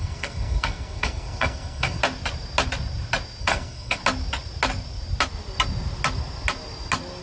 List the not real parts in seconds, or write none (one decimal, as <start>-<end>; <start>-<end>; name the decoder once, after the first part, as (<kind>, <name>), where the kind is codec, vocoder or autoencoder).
0.0-2.0 (codec, SNAC); 3.4-4.0